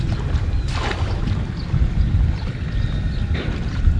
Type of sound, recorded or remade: remade